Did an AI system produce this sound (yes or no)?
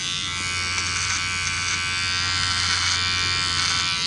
no